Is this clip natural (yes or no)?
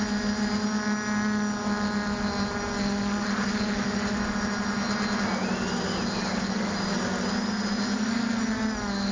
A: yes